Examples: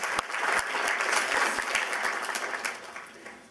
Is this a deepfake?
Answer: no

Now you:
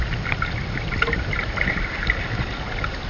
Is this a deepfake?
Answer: no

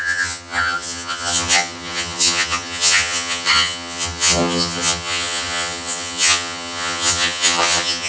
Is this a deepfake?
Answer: yes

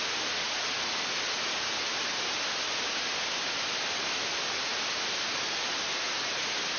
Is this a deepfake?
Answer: no